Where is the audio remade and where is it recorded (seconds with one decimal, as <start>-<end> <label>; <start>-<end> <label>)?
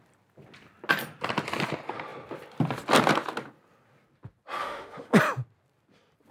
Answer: 0.0-4.6 recorded; 4.6-5.2 remade; 5.2-6.3 recorded